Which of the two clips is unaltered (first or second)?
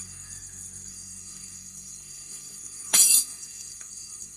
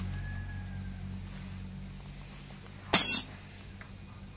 second